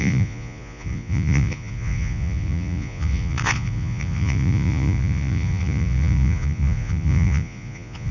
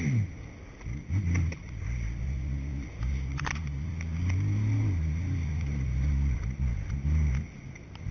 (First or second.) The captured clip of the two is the second